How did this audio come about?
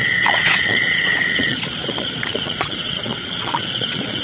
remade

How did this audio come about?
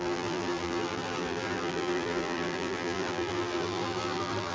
remade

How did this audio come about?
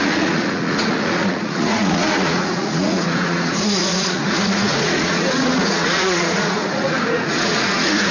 remade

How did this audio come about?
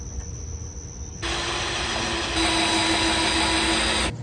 recorded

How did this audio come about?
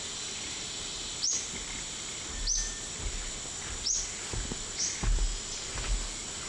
recorded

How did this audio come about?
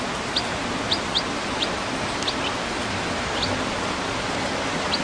recorded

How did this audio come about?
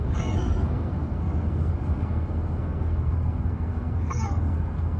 remade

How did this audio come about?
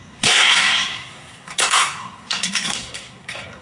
remade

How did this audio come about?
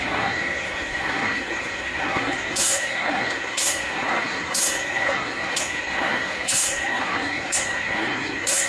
remade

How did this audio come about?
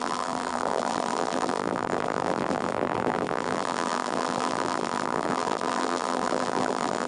remade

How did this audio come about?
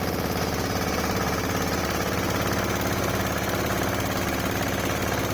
recorded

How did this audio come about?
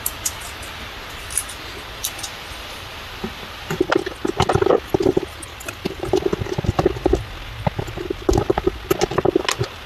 recorded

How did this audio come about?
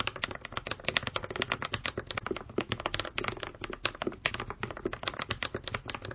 recorded